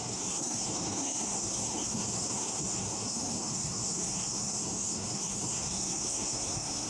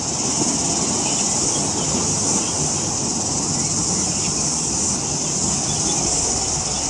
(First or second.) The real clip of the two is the second